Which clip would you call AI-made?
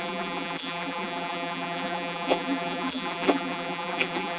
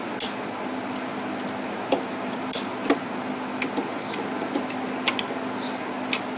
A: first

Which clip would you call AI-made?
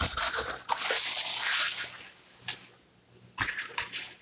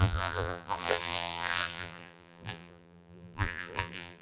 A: second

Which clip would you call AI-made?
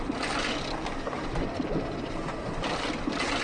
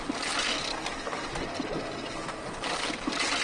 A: first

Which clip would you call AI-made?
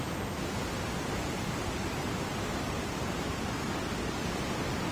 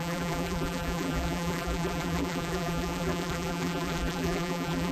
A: second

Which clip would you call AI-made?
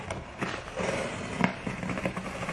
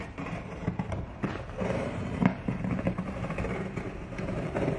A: second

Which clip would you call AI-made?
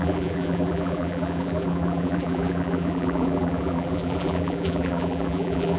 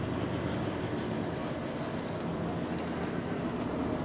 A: first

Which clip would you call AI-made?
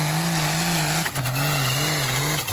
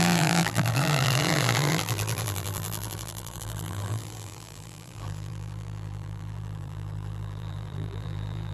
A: second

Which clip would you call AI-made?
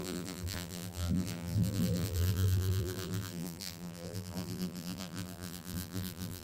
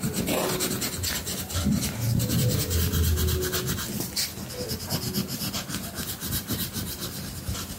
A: first